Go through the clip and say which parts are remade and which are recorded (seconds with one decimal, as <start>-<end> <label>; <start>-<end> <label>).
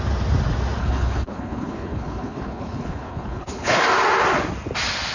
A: 0.0-0.8 recorded; 0.8-3.8 remade; 3.8-5.1 recorded